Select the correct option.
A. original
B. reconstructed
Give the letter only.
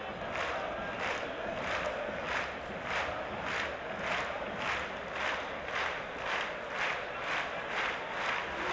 A